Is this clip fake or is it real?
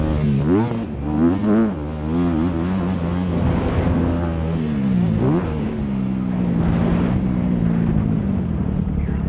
real